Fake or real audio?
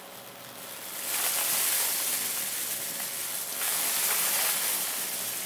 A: real